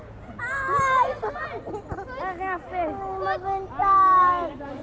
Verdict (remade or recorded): recorded